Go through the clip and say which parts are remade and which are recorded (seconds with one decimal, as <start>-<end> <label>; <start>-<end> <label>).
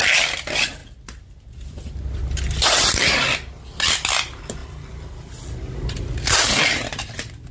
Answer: 0.0-7.5 recorded